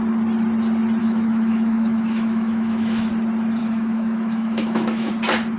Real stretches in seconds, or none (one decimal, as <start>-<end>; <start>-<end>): 0.0-1.0; 3.1-3.6; 5.1-5.6